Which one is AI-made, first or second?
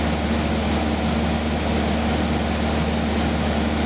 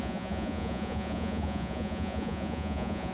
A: second